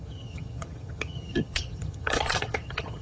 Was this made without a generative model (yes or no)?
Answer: no